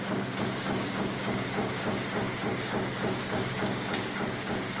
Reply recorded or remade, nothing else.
remade